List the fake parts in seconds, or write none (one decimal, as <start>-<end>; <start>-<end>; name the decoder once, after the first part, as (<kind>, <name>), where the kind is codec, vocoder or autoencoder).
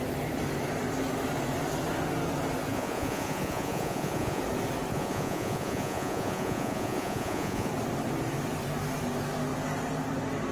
2.7-4.4 (vocoder, Vocos); 4.9-7.7